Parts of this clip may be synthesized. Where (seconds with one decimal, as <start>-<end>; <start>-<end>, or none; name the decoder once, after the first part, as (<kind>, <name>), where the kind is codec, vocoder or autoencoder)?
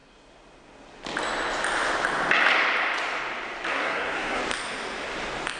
3.7-4.4 (codec, SNAC)